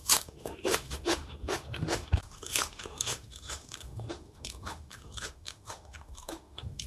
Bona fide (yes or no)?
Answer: no